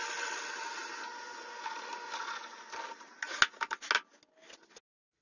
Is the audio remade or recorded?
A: recorded